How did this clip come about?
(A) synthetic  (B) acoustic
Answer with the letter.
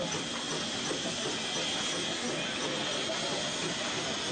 B